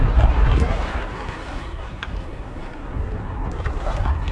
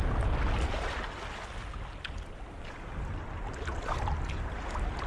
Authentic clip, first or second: second